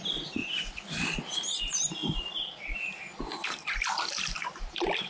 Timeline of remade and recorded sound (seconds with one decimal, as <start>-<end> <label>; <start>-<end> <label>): 0.0-0.4 recorded; 0.4-1.2 remade; 1.2-5.1 recorded